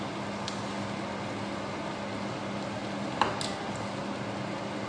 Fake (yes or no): no